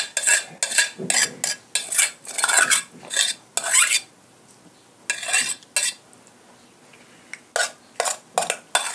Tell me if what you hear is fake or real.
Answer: real